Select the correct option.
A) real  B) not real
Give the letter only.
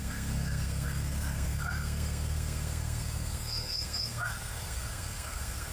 B